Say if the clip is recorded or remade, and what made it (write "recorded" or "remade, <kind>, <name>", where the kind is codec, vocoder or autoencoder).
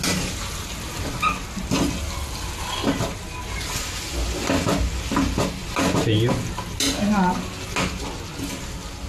recorded